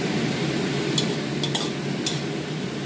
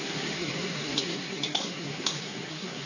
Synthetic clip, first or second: second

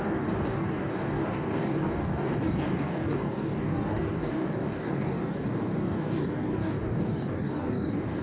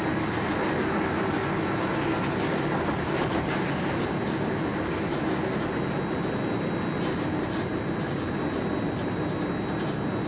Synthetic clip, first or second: first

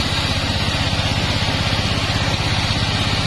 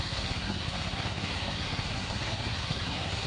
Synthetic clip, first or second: second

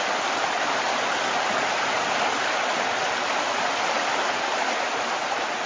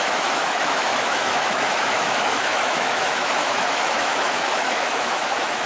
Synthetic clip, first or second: second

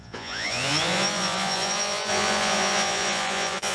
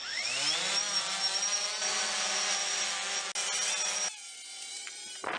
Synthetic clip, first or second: first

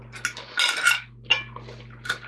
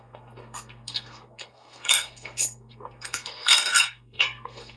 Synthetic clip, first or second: second